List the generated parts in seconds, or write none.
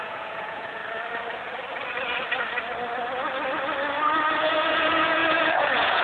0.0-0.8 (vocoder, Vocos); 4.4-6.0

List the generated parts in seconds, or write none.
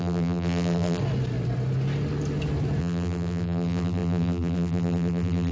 0.0-1.0 (vocoder, BigVGAN v2); 2.8-5.5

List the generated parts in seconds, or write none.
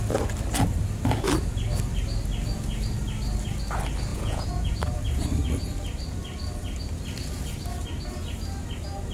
4.1-4.7 (vocoder, Vocos)